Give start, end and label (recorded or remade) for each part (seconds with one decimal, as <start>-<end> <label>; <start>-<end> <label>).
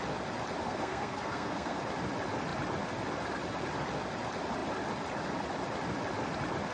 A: 0.0-0.6 recorded; 0.6-1.8 remade; 1.8-6.7 recorded